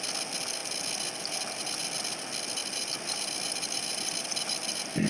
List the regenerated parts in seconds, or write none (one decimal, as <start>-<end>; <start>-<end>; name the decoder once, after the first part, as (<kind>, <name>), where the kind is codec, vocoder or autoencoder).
2.6-4.3 (vocoder, BigVGAN v2)